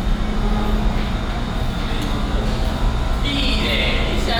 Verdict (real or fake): real